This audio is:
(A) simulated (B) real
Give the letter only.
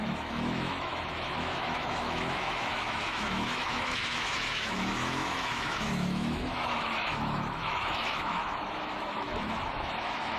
A